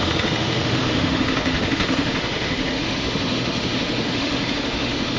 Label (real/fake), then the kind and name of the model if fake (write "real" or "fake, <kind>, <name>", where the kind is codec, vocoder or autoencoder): fake, autoencoder, DAC-VAE